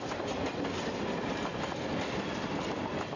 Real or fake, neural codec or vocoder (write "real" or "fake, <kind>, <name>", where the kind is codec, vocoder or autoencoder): real